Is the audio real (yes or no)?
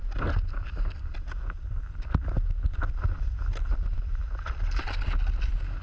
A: yes